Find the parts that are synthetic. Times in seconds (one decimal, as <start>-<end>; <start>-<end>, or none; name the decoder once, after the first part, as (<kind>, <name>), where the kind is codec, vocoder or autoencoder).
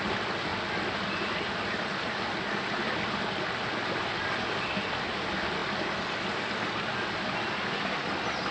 none